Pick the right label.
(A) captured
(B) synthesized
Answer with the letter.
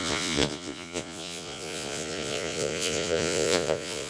B